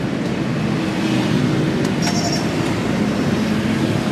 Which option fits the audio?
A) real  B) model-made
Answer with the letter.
B